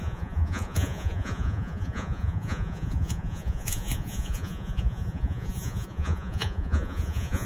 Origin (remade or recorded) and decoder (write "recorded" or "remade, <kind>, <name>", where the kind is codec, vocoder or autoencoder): remade, vocoder, Vocos